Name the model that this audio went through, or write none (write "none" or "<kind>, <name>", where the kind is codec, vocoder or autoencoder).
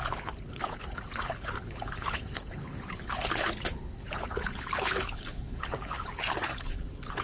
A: codec, HILCodec